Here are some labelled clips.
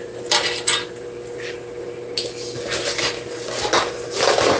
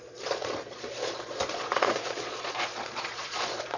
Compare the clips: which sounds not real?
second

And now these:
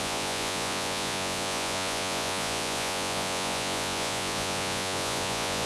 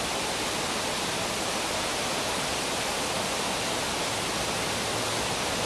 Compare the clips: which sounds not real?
first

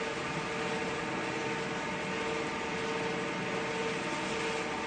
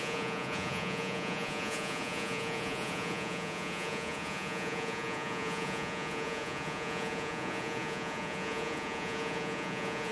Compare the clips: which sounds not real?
second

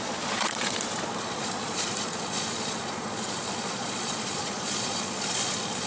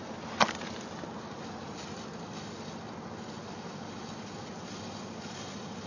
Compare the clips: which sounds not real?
first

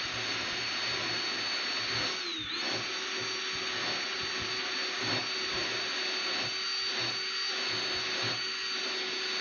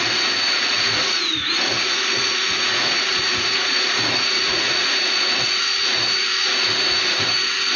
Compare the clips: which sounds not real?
second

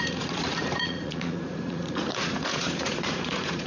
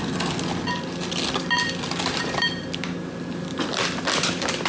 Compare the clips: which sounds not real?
first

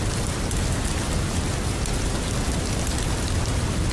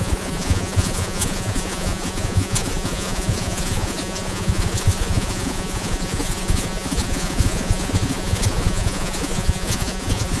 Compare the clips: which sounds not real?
second